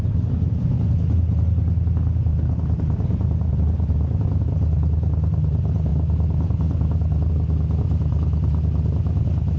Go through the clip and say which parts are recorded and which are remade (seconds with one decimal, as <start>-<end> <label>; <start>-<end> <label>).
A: 0.0-9.6 recorded